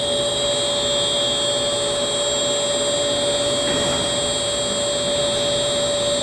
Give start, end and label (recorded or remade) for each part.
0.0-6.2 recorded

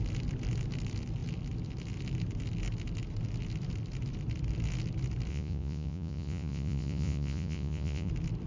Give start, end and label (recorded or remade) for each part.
0.0-5.3 recorded; 5.3-8.1 remade; 8.1-8.5 recorded

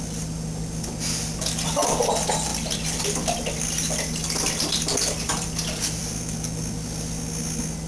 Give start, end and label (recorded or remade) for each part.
0.0-7.9 recorded